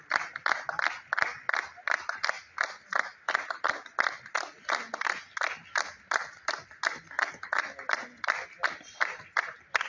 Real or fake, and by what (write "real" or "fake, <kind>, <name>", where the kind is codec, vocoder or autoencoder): real